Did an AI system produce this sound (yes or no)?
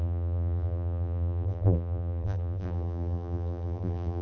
yes